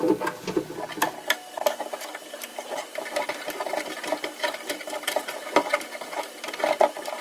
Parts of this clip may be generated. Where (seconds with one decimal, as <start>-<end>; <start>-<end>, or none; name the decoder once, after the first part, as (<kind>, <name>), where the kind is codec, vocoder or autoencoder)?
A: 2.5-6.2 (vocoder, BigVGAN v2)